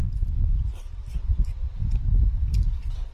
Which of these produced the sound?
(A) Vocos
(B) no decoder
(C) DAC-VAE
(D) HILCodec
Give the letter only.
B